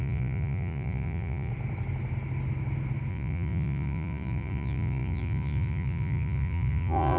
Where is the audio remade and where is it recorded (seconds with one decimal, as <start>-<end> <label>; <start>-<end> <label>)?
0.0-1.5 remade; 1.5-3.1 recorded; 3.1-7.2 remade